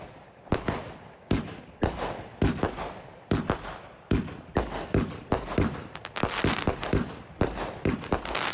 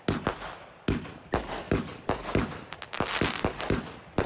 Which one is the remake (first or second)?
first